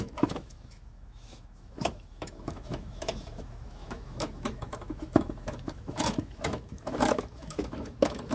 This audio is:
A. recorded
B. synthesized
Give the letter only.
B